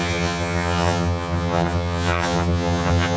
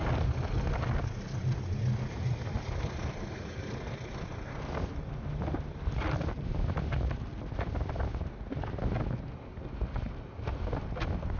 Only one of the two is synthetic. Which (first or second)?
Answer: first